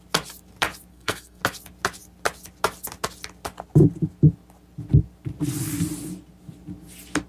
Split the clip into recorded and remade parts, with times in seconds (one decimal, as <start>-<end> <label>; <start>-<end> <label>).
0.0-0.9 recorded; 0.9-1.4 remade; 1.4-7.3 recorded